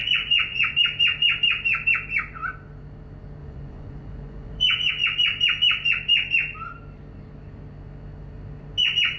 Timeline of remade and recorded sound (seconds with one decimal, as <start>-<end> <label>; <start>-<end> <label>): 0.0-0.8 remade; 0.8-3.4 recorded; 3.4-4.9 remade; 4.9-9.2 recorded